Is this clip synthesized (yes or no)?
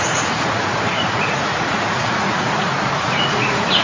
yes